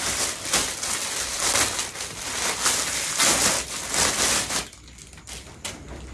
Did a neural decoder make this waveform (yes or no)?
no